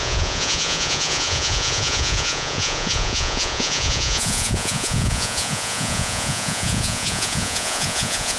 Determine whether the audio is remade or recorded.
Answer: remade